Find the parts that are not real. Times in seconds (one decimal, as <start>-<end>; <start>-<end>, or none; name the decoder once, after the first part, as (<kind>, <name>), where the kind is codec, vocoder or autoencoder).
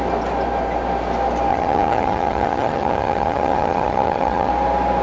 1.5-4.5 (vocoder, HiFi-GAN)